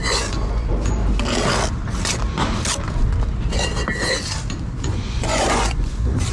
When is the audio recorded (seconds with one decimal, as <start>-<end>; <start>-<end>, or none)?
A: 1.0-4.8